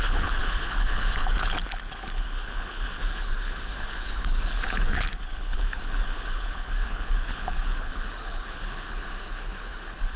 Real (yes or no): no